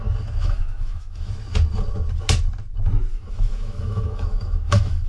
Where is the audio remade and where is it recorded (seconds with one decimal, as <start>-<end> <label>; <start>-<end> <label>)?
0.0-0.4 recorded; 0.4-1.3 remade; 1.3-3.1 recorded; 3.1-5.1 remade

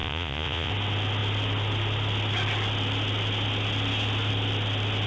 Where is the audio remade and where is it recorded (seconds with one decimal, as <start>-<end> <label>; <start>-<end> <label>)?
0.0-0.7 remade; 0.7-5.1 recorded

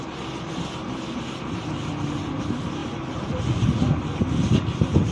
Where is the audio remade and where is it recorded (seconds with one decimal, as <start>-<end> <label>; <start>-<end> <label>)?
0.0-5.1 recorded

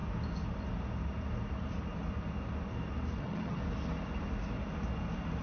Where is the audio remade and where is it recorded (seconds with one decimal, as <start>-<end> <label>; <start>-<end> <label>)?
0.0-3.2 recorded; 3.2-3.6 remade; 3.6-5.4 recorded

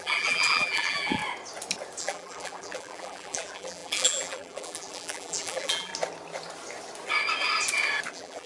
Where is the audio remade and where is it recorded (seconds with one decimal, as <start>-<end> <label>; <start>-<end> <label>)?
0.0-1.2 remade; 1.2-2.0 recorded; 2.0-5.9 remade; 5.9-8.1 recorded; 8.1-8.5 remade

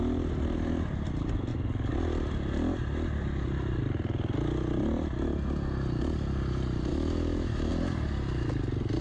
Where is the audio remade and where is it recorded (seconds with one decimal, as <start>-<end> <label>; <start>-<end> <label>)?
0.0-6.9 recorded; 6.9-7.7 remade; 7.7-9.0 recorded